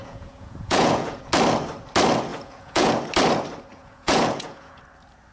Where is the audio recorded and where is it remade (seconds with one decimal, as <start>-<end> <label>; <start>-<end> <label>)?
0.0-1.2 remade; 1.2-2.3 recorded; 2.3-2.9 remade; 2.9-3.7 recorded; 3.7-4.8 remade; 4.8-5.3 recorded

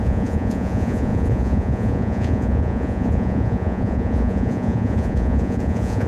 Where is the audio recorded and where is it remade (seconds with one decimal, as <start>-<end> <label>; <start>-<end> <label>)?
0.0-6.1 remade

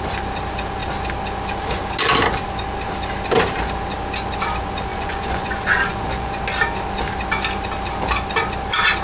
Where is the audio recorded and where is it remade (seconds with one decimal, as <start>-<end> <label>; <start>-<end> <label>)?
0.0-4.9 recorded; 4.9-6.4 remade; 6.4-9.0 recorded

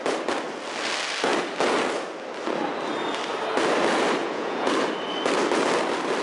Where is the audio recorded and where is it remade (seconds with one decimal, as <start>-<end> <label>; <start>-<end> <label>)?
0.0-4.2 recorded; 4.2-4.7 remade; 4.7-6.2 recorded

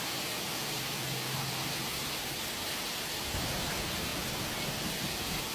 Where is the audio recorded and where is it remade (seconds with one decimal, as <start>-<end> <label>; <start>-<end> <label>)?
0.0-5.5 recorded